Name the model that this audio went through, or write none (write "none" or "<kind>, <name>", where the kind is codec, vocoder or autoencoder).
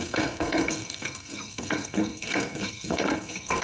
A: codec, SNAC